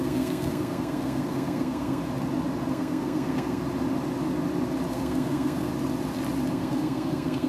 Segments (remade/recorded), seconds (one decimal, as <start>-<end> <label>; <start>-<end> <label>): 0.0-2.0 remade; 2.0-2.7 recorded; 2.7-3.6 remade; 3.6-4.9 recorded; 4.9-5.7 remade; 5.7-6.5 recorded; 6.5-7.5 remade